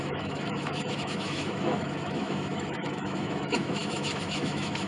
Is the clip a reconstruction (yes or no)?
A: yes